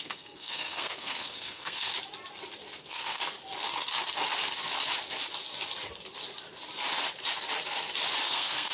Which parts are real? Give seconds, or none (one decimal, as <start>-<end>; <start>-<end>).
1.9-2.8; 3.2-8.2